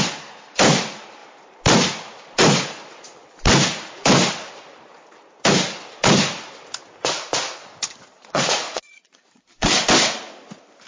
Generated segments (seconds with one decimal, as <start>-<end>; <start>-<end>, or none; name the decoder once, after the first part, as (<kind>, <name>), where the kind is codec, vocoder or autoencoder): 8.1-9.8 (vocoder, Vocos)